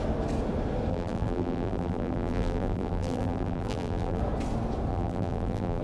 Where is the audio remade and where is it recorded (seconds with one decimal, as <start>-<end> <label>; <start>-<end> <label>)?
0.0-0.9 recorded; 0.9-4.2 remade; 4.2-4.9 recorded; 4.9-5.8 remade